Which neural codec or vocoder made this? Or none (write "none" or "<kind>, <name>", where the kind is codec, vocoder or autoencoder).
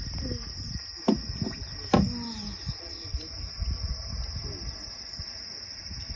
none